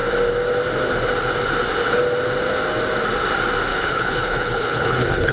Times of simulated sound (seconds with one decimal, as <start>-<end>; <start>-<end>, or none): 3.7-5.3